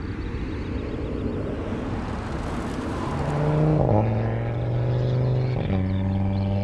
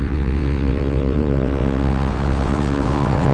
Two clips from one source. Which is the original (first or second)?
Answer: first